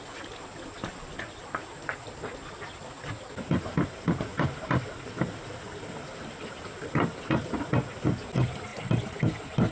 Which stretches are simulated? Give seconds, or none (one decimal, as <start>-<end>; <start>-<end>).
8.7-9.2